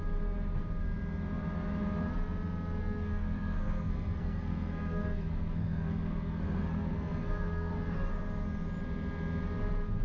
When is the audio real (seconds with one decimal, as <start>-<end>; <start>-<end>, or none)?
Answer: 0.0-2.8; 7.7-10.0